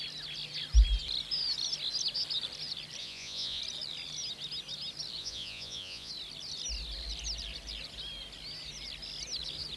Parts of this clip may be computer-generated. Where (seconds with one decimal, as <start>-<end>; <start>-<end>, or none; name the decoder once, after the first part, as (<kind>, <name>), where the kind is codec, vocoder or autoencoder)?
3.0-3.6 (vocoder, Vocos); 5.2-6.1